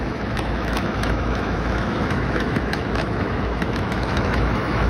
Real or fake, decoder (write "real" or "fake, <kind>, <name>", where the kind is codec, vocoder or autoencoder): fake, autoencoder, DAC-VAE